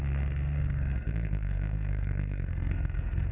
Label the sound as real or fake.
fake